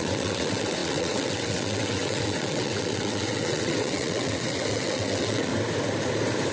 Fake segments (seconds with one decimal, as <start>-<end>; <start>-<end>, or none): 0.0-5.5